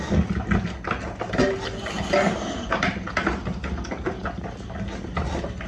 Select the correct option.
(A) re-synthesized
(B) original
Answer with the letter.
B